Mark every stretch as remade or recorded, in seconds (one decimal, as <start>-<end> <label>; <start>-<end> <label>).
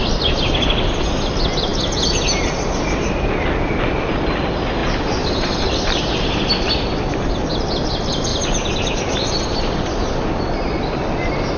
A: 0.0-4.8 recorded; 4.8-6.5 remade; 6.5-8.3 recorded; 8.3-10.1 remade; 10.1-11.6 recorded